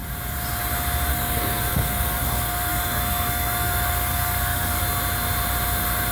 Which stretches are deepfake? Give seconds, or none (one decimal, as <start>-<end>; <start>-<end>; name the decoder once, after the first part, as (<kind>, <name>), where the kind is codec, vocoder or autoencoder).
1.1-4.8 (codec, SNAC)